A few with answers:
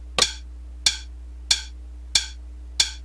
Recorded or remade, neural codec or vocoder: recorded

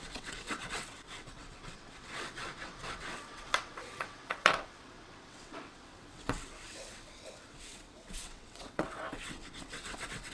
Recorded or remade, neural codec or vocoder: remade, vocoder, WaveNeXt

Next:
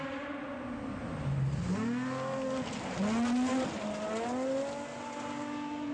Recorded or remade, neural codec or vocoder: recorded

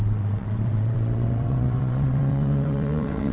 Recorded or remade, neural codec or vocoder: remade, vocoder, WaveNeXt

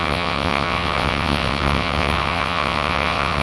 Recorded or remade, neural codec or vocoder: remade, vocoder, WaveNeXt